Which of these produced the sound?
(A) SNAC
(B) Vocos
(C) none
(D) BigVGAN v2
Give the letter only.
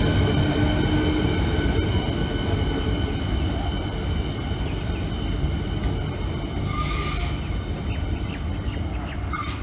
C